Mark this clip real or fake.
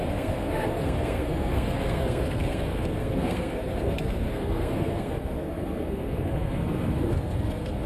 fake